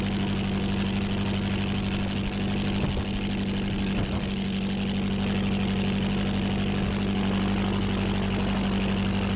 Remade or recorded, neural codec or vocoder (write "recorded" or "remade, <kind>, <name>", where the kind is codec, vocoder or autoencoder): recorded